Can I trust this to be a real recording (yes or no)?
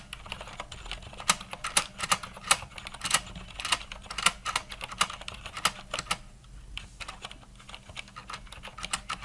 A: yes